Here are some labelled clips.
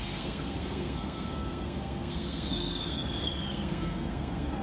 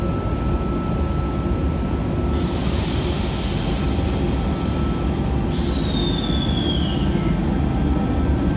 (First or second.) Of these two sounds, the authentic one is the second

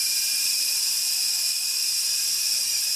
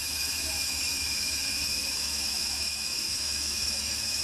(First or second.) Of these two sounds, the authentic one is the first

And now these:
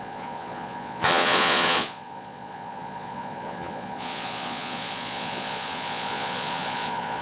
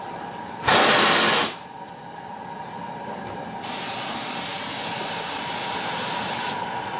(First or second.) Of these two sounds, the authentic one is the second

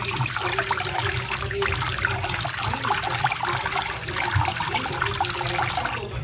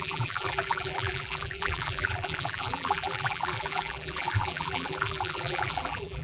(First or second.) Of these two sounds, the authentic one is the first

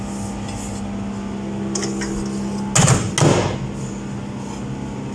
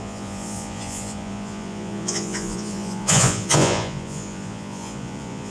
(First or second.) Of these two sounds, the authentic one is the first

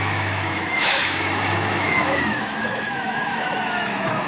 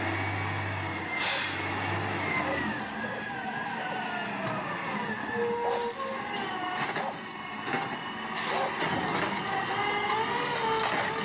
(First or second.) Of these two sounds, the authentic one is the second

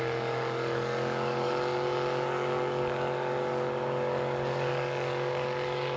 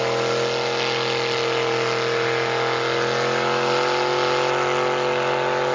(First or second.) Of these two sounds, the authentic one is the second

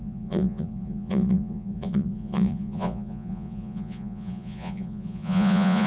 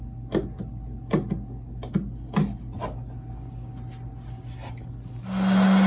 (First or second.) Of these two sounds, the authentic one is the second